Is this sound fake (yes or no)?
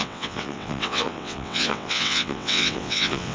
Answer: yes